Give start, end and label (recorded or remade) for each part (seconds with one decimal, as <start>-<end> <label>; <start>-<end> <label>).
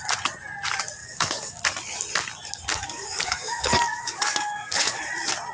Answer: 0.0-1.0 recorded; 1.0-1.6 remade; 1.6-2.7 recorded; 2.7-5.0 remade; 5.0-5.5 recorded